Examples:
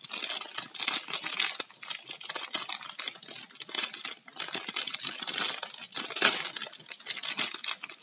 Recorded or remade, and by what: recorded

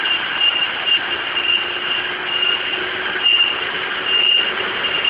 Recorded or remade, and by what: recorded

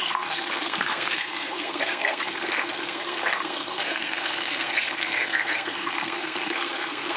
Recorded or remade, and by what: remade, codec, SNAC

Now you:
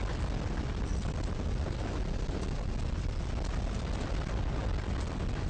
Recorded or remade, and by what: recorded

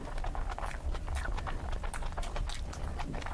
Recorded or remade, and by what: recorded